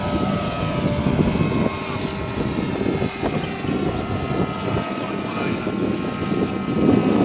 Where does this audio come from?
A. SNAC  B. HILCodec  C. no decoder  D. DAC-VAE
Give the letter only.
C